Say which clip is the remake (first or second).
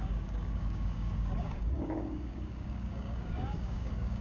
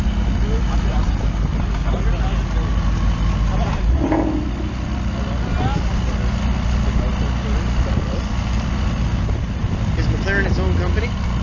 first